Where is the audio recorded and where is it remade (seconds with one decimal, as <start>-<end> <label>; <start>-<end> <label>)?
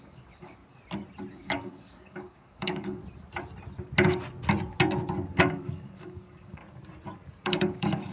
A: 0.0-0.6 remade; 0.6-1.3 recorded; 1.3-3.0 remade; 3.0-5.4 recorded; 5.4-6.6 remade; 6.6-7.4 recorded; 7.4-8.1 remade